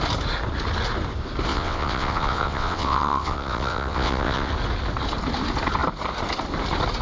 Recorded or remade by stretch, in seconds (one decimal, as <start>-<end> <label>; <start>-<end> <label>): 0.0-1.5 recorded; 1.5-4.5 remade; 4.5-7.0 recorded